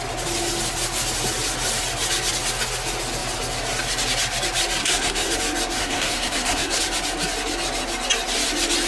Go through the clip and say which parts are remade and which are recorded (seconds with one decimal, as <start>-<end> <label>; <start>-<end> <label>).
0.0-4.8 recorded; 4.8-5.3 remade; 5.3-5.8 recorded; 5.8-6.8 remade; 6.8-8.9 recorded